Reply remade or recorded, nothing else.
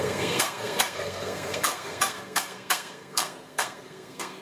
remade